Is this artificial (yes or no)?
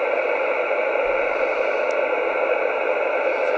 no